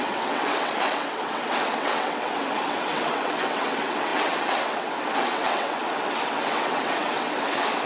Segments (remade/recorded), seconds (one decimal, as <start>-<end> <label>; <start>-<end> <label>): 0.0-7.9 remade